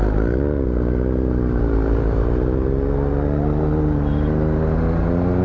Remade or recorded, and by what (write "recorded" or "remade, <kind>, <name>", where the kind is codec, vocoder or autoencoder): recorded